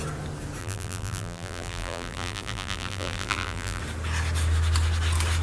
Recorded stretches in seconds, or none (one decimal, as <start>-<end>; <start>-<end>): 0.0-0.6; 3.8-5.4

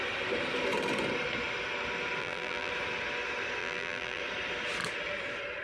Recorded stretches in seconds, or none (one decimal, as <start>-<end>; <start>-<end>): 0.0-2.2; 2.7-3.6; 4.2-5.6

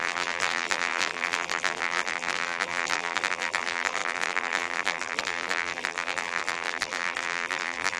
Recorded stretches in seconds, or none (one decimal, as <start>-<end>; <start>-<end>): none

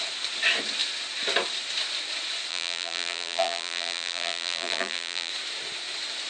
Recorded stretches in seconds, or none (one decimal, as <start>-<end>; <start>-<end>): 0.0-2.5; 5.3-6.3